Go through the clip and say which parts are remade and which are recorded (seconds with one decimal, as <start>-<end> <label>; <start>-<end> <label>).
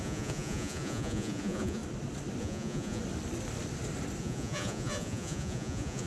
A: 0.0-1.8 remade; 1.8-2.4 recorded; 2.4-3.0 remade; 3.0-4.2 recorded; 4.2-6.1 remade